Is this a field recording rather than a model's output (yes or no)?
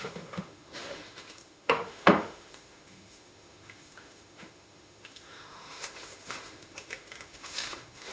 no